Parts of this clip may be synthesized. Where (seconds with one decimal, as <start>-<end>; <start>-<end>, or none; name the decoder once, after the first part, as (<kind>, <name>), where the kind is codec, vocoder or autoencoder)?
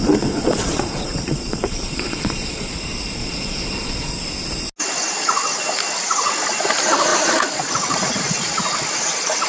0.0-2.7 (vocoder, Vocos); 3.2-4.1